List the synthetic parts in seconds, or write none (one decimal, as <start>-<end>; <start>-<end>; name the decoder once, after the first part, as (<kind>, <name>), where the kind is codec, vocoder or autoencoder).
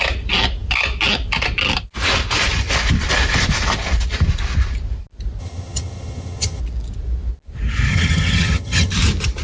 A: 5.4-6.6 (vocoder, HiFi-GAN); 7.9-8.9